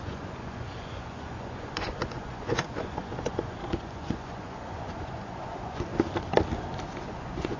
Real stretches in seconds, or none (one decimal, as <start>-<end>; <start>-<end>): 5.9-6.9

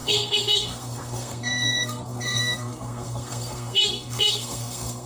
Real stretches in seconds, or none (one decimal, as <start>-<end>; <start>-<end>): none

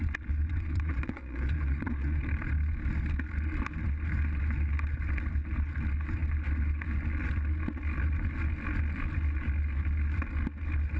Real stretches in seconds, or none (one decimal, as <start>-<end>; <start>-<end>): 0.0-0.5; 2.2-11.0

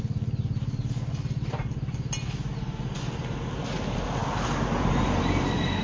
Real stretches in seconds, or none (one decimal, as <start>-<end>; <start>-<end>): 0.0-5.8

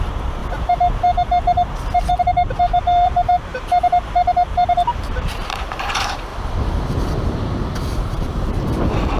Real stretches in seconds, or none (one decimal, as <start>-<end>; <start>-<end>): 0.4-2.1; 6.3-8.1